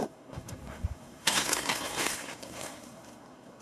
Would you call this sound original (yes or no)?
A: no